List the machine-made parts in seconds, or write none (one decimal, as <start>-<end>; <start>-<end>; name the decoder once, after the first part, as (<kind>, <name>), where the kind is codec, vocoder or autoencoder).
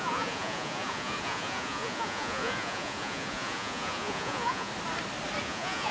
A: 0.0-4.7 (vocoder, Vocos); 5.4-5.9